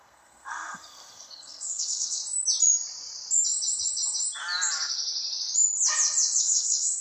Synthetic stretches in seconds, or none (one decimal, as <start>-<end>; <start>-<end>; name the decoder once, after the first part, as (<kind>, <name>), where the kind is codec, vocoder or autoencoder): 0.0-2.2 (codec, SNAC); 6.4-7.0